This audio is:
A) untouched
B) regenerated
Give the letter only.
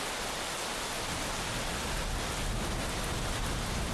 A